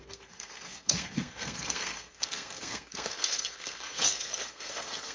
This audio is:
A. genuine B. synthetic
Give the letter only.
B